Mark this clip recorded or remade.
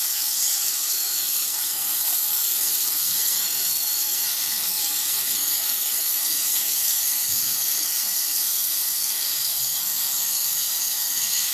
remade